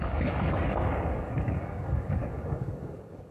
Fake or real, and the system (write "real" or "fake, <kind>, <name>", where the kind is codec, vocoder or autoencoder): fake, codec, DAC